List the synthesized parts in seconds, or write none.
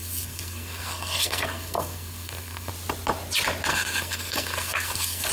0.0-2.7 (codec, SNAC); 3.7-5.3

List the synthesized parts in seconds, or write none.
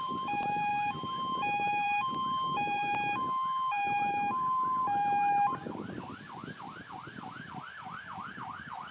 0.0-5.6 (vocoder, BigVGAN v2); 8.3-8.9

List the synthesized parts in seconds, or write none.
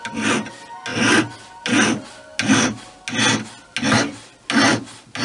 none